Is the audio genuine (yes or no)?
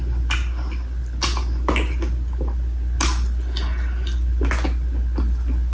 yes